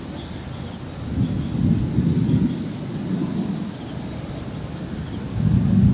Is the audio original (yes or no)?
yes